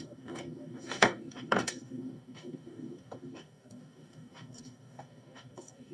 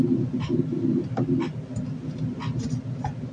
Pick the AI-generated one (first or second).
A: first